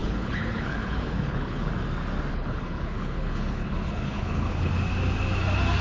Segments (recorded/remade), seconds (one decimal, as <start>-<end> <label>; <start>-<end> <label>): 0.0-1.7 remade; 1.7-2.3 recorded; 2.3-4.7 remade; 4.7-5.8 recorded